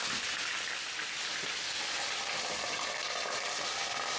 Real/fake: real